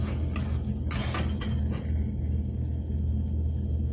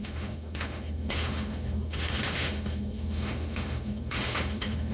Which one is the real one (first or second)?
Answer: first